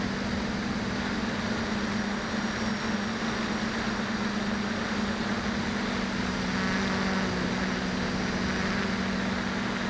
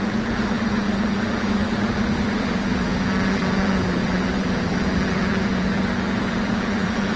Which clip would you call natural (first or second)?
first